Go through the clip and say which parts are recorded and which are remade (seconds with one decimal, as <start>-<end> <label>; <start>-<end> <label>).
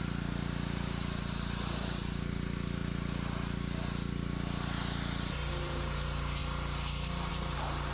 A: 0.0-2.8 remade; 2.8-4.6 recorded; 4.6-6.4 remade; 6.4-7.3 recorded; 7.3-7.9 remade